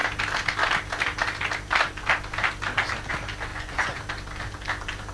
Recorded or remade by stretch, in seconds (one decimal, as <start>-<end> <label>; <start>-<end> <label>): 0.0-3.5 recorded; 3.5-4.0 remade; 4.0-5.1 recorded